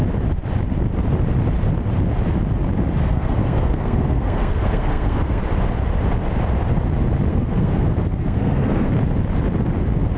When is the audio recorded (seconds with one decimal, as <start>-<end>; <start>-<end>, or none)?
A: 0.0-3.0; 5.4-7.3; 8.9-10.2